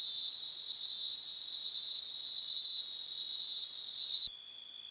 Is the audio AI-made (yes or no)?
no